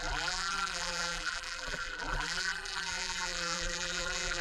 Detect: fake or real fake